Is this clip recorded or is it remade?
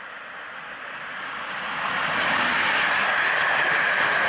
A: recorded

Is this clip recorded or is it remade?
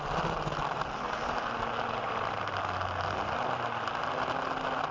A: recorded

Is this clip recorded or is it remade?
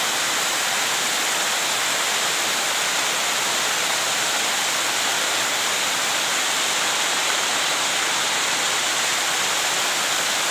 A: recorded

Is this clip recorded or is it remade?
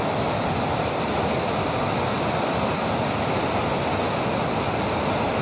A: recorded